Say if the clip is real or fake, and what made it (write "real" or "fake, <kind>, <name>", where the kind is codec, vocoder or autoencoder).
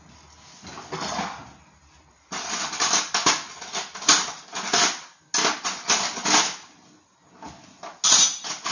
real